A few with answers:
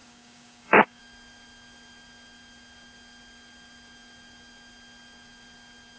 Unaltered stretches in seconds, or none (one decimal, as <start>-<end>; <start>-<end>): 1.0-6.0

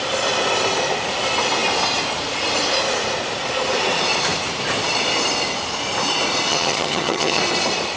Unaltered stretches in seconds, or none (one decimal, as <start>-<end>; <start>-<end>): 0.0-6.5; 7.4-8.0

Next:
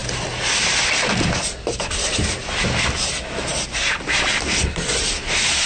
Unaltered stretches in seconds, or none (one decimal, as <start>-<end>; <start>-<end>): 0.0-5.7